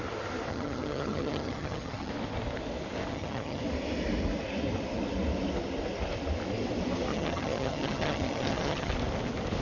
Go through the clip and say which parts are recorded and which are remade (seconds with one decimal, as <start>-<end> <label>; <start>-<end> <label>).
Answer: 0.0-0.5 recorded; 0.5-2.1 remade; 2.1-3.1 recorded; 3.1-3.6 remade; 3.6-7.1 recorded; 7.1-8.9 remade; 8.9-9.6 recorded